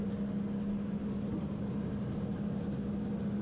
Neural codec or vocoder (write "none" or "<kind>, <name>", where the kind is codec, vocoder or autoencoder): none